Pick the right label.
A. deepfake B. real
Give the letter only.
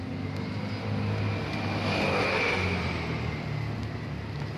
B